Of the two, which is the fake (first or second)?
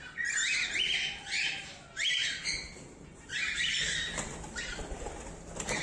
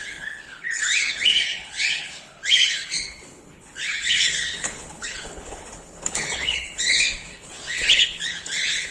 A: second